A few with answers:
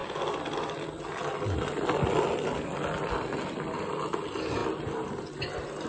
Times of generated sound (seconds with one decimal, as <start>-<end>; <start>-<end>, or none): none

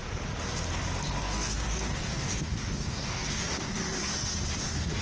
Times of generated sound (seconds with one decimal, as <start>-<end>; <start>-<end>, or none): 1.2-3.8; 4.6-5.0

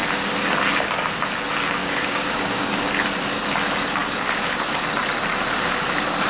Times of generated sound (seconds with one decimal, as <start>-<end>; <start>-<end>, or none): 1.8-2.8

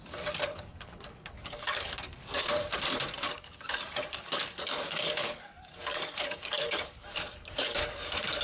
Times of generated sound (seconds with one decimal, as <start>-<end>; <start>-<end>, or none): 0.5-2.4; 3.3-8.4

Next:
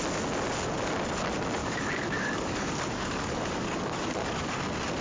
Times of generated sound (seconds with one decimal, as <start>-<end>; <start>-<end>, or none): 1.6-4.6